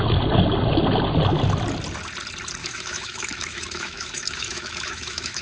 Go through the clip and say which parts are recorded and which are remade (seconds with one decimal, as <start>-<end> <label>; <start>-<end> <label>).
0.0-2.6 recorded; 2.6-5.4 remade